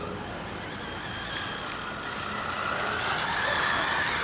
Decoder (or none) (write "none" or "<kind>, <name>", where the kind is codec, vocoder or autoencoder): none